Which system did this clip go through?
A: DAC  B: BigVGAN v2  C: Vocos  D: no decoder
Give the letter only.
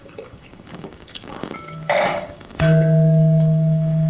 A